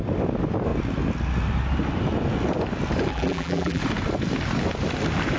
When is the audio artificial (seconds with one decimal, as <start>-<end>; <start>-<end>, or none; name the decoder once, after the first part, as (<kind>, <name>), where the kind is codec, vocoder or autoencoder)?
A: 3.1-3.8 (vocoder, BigVGAN v2)